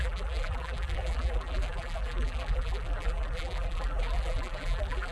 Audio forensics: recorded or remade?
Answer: remade